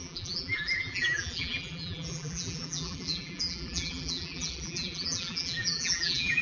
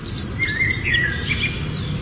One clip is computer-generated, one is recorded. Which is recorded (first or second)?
second